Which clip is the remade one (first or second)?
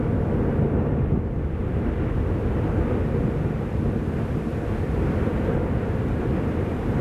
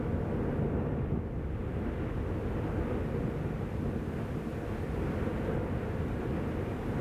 first